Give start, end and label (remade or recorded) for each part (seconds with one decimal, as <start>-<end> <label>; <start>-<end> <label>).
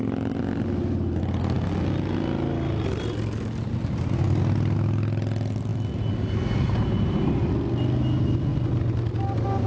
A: 0.0-9.7 recorded